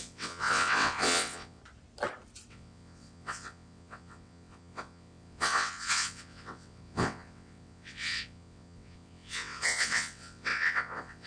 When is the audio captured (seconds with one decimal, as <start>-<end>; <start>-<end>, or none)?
1.6-2.5